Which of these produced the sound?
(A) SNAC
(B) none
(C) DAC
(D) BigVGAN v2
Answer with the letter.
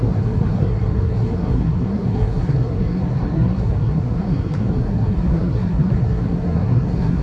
A